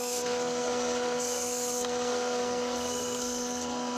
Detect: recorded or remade remade